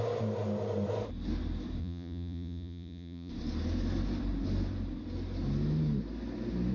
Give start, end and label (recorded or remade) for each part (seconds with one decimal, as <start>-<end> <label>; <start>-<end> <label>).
0.0-1.8 recorded; 1.8-3.3 remade; 3.3-6.7 recorded